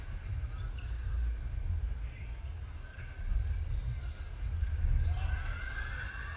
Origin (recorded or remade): recorded